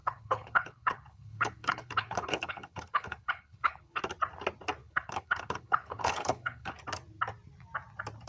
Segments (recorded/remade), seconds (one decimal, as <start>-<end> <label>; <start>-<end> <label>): 0.0-4.0 remade; 4.0-4.8 recorded; 4.8-6.7 remade; 6.7-8.3 recorded